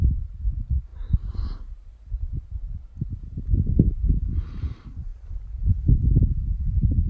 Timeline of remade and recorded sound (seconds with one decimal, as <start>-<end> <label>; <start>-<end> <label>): 0.0-7.1 recorded